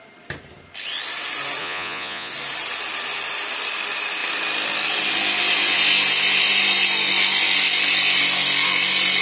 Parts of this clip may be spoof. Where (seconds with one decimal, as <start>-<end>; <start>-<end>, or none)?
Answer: 1.6-2.3